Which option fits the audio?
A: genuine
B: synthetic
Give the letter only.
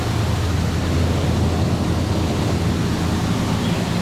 A